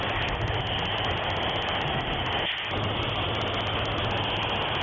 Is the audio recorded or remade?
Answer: recorded